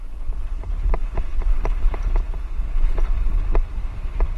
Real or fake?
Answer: real